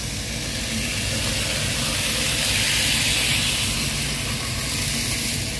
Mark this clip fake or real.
real